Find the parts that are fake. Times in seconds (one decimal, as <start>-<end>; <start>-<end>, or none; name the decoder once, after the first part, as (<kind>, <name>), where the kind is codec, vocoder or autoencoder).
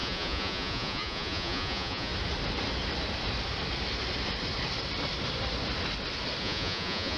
0.0-2.1 (vocoder, Vocos); 6.4-7.2